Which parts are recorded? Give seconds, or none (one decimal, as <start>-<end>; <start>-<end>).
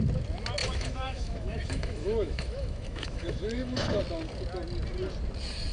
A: 0.0-0.6; 4.0-5.7